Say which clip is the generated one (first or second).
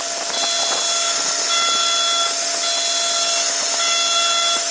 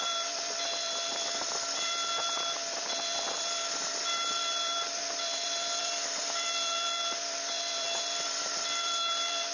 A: second